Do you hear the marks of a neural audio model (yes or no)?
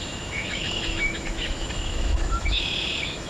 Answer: yes